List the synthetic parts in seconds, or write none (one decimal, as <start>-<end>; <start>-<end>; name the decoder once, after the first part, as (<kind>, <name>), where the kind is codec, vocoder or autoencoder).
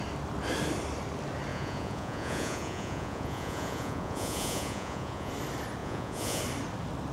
1.5-5.3 (vocoder, Vocos); 5.8-6.4